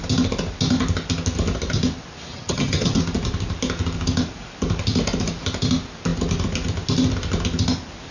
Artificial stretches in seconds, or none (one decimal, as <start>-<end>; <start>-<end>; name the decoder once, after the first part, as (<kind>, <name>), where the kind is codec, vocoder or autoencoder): 2.3-3.0 (vocoder, HiFi-GAN)